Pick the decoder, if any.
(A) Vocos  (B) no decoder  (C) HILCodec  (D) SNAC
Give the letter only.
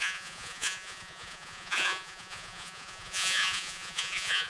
A